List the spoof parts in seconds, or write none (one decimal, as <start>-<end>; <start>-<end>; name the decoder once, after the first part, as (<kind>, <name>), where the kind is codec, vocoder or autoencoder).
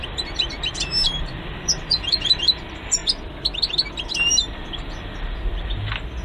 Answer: 0.0-3.0 (vocoder, BigVGAN v2); 4.3-6.2